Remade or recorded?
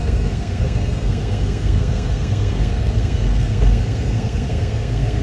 remade